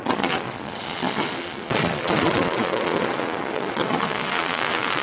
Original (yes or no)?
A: no